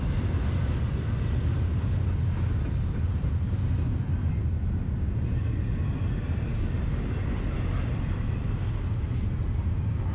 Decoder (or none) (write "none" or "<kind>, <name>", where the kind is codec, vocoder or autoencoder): none